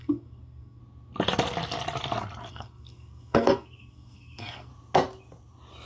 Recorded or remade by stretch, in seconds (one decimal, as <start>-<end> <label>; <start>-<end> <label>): 0.0-0.8 remade; 0.8-2.5 recorded; 2.5-4.7 remade; 4.7-5.9 recorded